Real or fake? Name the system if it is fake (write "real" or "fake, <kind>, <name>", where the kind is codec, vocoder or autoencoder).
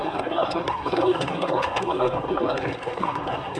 fake, codec, SNAC